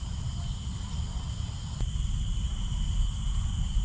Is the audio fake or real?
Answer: real